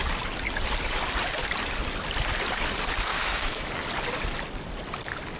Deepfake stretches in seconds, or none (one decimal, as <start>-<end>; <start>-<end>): 3.1-3.7